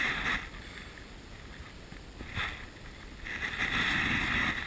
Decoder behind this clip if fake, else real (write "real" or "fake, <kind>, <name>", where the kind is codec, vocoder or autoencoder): real